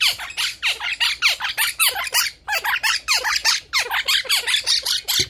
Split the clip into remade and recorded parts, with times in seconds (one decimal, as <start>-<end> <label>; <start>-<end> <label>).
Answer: 0.0-5.3 recorded